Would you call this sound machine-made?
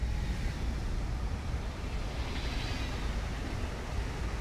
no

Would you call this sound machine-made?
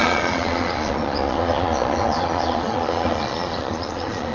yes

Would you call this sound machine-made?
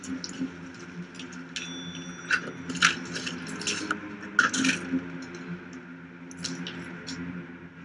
no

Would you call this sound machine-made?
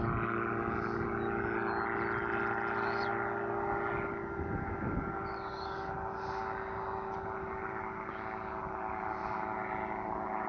no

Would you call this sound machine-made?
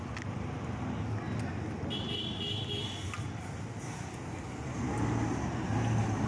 no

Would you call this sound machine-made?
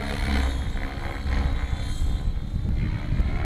no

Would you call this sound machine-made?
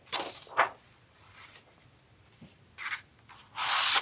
yes